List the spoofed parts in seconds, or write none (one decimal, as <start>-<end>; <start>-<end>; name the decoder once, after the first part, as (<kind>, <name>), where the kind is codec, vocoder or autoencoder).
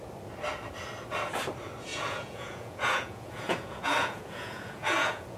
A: 1.9-5.4 (vocoder, Vocos)